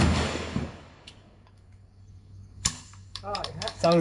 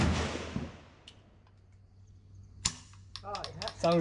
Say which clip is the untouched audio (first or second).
second